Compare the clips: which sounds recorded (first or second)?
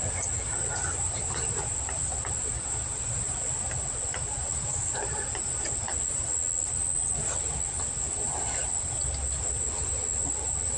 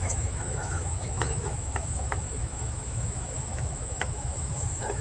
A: first